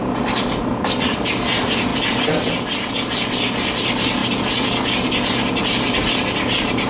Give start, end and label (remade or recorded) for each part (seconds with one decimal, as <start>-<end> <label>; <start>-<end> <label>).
0.0-6.9 recorded

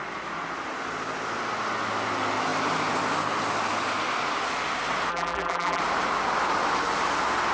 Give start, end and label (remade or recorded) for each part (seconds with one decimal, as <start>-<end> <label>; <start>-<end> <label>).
0.0-5.1 recorded; 5.1-5.8 remade; 5.8-7.5 recorded

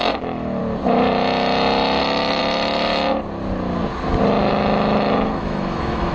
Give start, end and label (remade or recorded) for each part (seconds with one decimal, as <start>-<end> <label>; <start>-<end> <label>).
0.0-0.6 remade; 0.6-2.0 recorded; 2.0-2.4 remade; 2.4-4.5 recorded; 4.5-6.1 remade

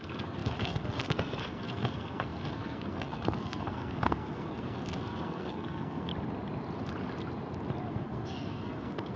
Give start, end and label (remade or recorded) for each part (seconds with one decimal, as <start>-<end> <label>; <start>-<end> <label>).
0.0-6.1 remade; 6.1-7.9 recorded; 7.9-9.2 remade

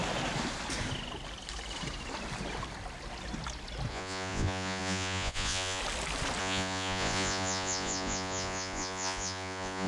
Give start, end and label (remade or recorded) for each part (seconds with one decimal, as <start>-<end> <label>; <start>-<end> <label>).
0.0-3.9 recorded; 3.9-5.8 remade; 5.8-6.4 recorded; 6.4-9.9 remade

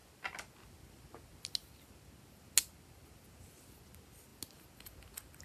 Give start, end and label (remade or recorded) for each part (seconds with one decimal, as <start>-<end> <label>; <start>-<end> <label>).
0.0-5.4 recorded